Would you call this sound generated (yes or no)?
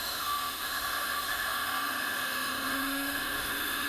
yes